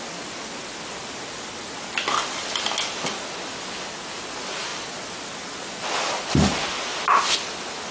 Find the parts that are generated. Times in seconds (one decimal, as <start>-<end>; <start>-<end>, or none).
none